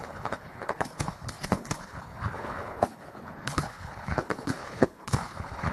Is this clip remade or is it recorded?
remade